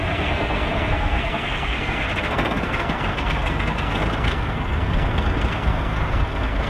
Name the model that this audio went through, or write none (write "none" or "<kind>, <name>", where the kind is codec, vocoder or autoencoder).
codec, SNAC